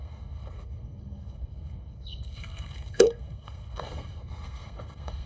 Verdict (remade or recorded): remade